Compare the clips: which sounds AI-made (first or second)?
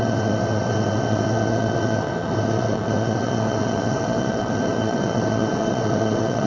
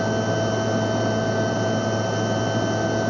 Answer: first